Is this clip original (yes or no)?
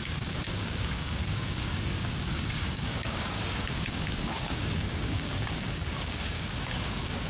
no